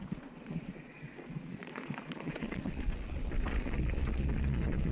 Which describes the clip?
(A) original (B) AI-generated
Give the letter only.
B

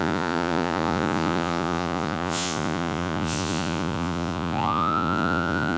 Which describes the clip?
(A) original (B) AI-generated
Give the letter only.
B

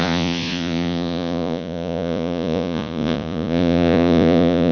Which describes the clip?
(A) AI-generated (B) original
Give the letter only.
A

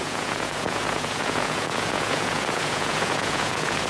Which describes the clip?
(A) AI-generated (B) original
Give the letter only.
A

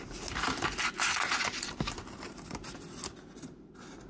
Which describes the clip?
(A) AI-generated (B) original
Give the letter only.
B